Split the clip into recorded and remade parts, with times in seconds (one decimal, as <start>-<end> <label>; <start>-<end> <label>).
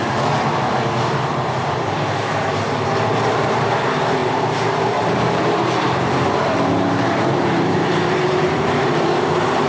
0.0-9.7 remade